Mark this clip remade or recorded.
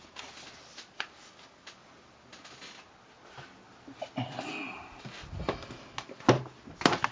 recorded